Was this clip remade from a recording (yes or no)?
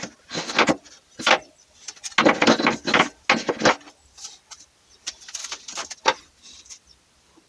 no